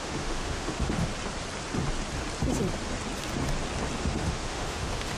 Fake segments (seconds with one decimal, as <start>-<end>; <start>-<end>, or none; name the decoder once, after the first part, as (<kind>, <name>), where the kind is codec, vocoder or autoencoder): 0.0-1.1 (autoencoder, DAC-VAE); 4.0-5.2